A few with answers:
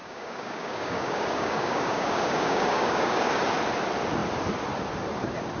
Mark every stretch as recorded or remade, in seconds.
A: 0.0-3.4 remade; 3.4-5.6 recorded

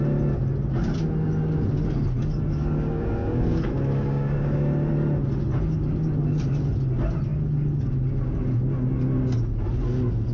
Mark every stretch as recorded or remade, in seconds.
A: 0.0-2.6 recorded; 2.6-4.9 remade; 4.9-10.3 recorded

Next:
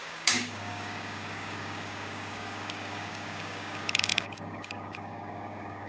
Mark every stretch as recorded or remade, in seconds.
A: 0.0-5.9 remade

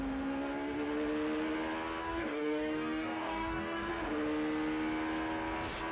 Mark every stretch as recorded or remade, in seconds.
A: 0.0-2.0 recorded; 2.0-3.9 remade; 3.9-5.9 recorded